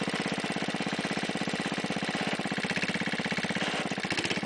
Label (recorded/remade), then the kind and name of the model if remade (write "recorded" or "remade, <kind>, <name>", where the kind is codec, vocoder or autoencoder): recorded